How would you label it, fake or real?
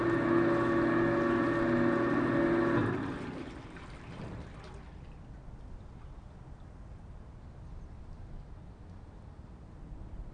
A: real